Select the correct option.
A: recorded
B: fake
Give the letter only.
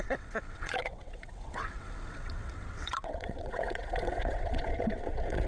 B